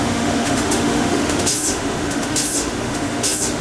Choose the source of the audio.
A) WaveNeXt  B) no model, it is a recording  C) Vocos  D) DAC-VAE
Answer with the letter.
D